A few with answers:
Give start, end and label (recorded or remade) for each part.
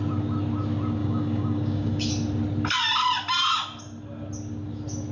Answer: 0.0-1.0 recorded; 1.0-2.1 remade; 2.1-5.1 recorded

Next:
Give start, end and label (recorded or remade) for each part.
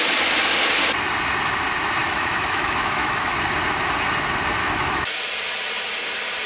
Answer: 0.0-2.0 recorded; 2.0-3.3 remade; 3.3-4.6 recorded; 4.6-5.2 remade; 5.2-6.5 recorded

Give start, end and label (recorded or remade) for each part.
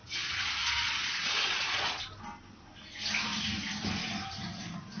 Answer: 0.0-2.0 remade; 2.0-5.0 recorded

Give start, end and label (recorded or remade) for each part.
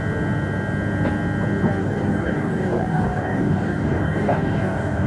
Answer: 0.0-1.8 recorded; 1.8-5.1 remade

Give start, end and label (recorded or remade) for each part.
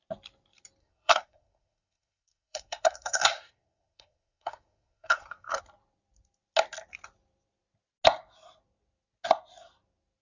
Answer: 0.0-0.8 recorded; 0.8-5.6 remade; 5.6-10.2 recorded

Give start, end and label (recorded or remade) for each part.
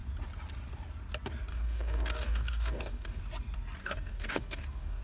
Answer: 0.0-1.5 recorded; 1.5-3.2 remade; 3.2-3.8 recorded; 3.8-5.0 remade